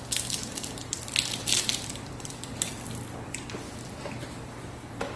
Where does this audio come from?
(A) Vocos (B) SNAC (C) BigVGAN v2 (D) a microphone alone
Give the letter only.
C